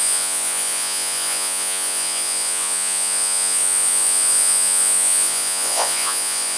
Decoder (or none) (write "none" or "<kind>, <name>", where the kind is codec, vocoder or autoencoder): vocoder, Vocos